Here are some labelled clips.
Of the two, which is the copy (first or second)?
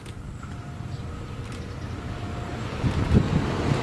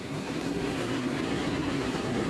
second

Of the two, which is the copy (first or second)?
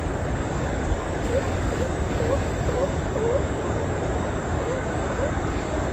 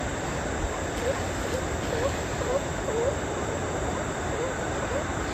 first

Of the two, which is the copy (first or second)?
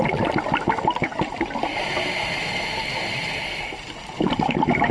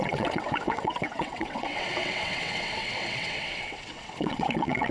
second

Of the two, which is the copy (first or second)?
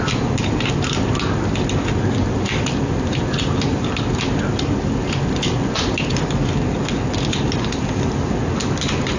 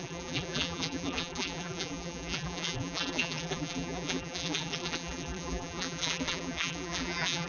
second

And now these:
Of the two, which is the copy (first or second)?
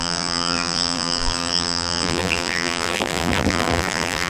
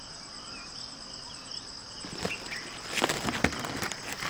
first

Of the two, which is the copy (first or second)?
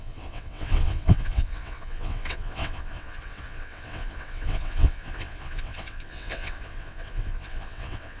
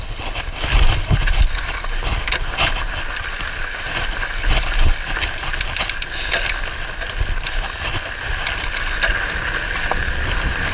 first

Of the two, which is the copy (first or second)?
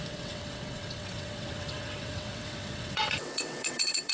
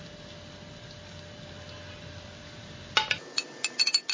first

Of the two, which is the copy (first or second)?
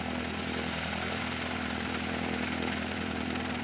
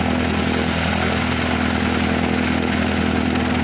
first